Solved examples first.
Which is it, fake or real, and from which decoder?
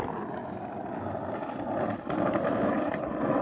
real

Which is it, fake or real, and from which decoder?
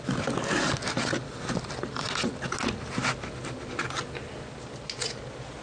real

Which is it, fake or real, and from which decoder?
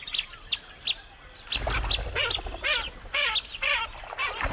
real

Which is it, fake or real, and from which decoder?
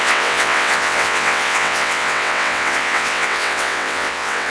fake, vocoder, WaveNeXt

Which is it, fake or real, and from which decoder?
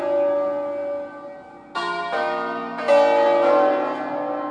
real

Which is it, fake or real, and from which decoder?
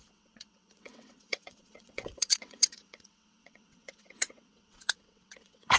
fake, vocoder, WaveNeXt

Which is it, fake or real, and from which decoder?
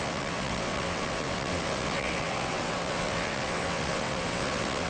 fake, vocoder, WaveNeXt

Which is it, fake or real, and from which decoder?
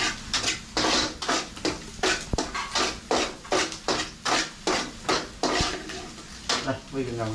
real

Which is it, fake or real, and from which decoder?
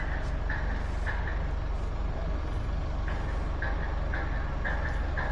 real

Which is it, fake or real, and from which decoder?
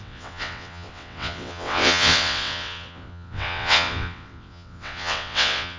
fake, vocoder, WaveNeXt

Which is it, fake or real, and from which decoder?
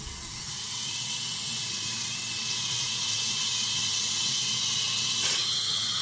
fake, vocoder, WaveNeXt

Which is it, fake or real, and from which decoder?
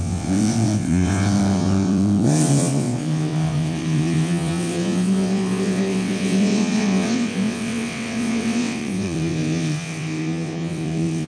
fake, vocoder, WaveNeXt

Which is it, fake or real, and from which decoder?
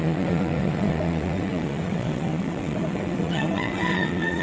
fake, vocoder, WaveNeXt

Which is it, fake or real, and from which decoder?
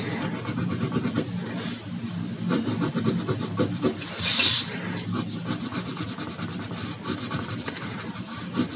real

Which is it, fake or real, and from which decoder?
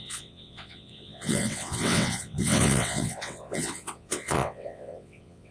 fake, vocoder, WaveNeXt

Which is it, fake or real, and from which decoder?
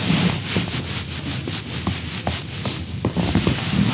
real